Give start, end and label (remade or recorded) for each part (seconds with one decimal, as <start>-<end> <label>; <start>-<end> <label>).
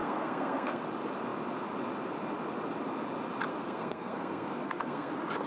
0.0-0.8 remade; 0.8-3.5 recorded; 3.5-5.1 remade; 5.1-5.5 recorded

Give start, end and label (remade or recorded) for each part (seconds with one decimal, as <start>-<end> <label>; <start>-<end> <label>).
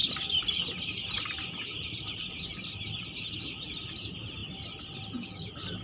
0.0-5.8 recorded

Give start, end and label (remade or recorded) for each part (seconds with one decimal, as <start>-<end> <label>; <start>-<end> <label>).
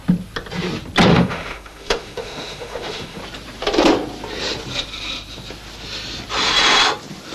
0.0-1.1 recorded; 1.1-3.2 remade; 3.2-7.3 recorded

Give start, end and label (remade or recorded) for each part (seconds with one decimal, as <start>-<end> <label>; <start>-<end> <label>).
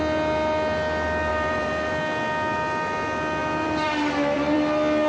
0.0-1.3 recorded; 1.3-1.9 remade; 1.9-3.4 recorded; 3.4-5.1 remade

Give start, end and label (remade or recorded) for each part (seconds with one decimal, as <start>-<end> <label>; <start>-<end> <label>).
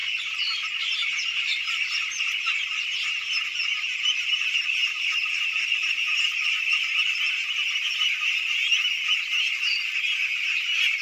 0.0-2.2 remade; 2.2-4.8 recorded; 4.8-5.3 remade; 5.3-11.0 recorded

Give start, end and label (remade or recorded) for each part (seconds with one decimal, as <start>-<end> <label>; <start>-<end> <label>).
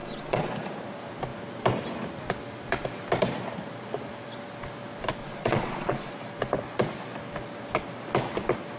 0.0-0.5 remade; 0.5-5.2 recorded; 5.2-6.1 remade; 6.1-8.8 recorded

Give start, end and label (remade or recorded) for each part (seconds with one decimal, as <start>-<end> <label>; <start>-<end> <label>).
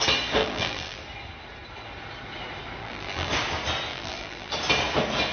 0.0-0.4 recorded; 0.4-1.0 remade; 1.0-2.8 recorded; 2.8-3.3 remade; 3.3-3.9 recorded; 3.9-4.5 remade; 4.5-5.3 recorded